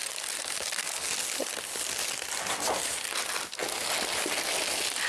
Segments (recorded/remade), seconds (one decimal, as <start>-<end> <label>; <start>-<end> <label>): 0.0-5.1 recorded